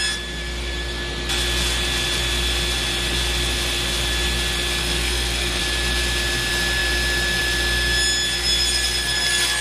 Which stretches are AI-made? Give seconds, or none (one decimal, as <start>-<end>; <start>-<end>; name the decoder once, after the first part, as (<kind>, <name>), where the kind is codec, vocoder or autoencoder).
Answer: 4.8-5.6 (codec, SNAC)